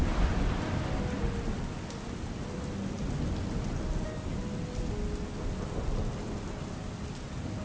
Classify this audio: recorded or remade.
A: recorded